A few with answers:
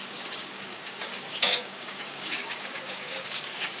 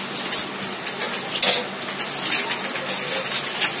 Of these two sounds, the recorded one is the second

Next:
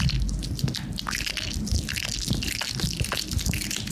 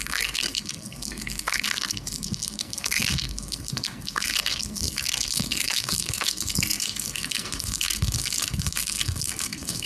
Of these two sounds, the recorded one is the first